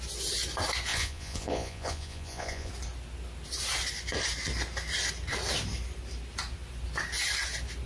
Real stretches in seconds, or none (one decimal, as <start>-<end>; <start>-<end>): 0.0-0.9; 2.7-7.9